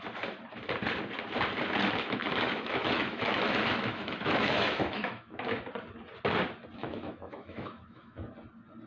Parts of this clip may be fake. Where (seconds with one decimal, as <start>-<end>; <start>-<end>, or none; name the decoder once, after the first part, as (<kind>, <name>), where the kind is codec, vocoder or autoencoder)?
2.2-5.6 (autoencoder, DAC-VAE); 6.8-8.3